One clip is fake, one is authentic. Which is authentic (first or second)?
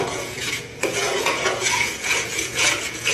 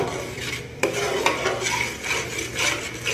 second